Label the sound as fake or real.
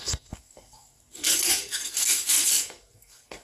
fake